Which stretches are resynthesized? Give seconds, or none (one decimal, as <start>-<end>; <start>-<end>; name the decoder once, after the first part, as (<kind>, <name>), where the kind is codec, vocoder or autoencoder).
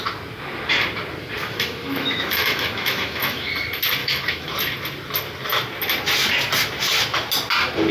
1.4-3.5 (autoencoder, DAC-VAE); 4.0-4.5